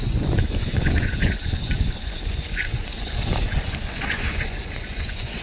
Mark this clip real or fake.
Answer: fake